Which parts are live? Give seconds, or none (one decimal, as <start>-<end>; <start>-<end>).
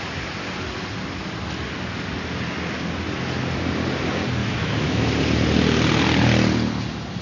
0.0-4.4; 5.1-7.2